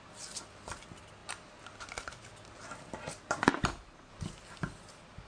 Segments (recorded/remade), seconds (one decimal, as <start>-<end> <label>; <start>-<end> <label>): 0.0-3.5 recorded; 3.5-4.1 remade; 4.1-5.3 recorded